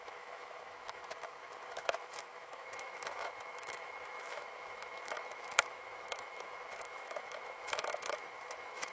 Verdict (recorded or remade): remade